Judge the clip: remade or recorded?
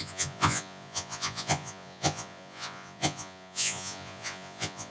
remade